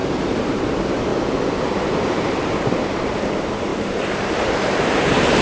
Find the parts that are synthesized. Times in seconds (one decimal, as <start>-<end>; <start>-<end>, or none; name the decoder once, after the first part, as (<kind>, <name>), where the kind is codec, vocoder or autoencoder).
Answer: 0.5-1.1 (vocoder, BigVGAN v2); 1.7-5.4